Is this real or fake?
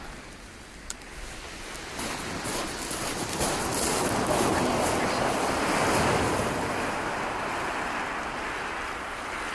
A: real